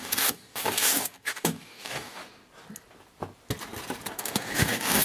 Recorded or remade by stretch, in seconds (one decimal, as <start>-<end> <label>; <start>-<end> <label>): 0.0-2.2 remade; 2.2-4.1 recorded; 4.1-5.0 remade

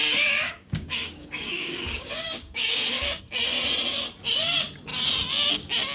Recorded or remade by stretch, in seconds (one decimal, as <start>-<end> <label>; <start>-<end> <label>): 0.0-3.2 remade; 3.2-5.9 recorded

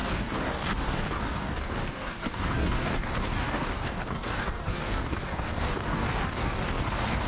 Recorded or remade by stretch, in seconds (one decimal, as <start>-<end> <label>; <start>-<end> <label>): 0.0-7.3 remade

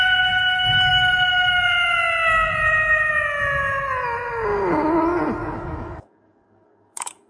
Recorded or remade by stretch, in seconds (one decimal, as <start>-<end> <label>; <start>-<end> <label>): 0.0-5.4 recorded; 5.4-7.3 remade

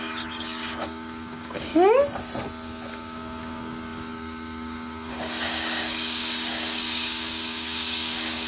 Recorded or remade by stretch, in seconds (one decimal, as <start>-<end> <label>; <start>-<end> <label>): 0.0-1.7 remade; 1.7-2.9 recorded; 2.9-8.5 remade

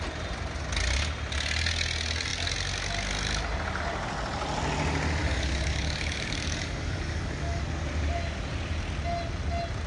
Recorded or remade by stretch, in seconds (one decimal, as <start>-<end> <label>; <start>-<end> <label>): 0.0-5.2 recorded; 5.2-7.6 remade; 7.6-9.9 recorded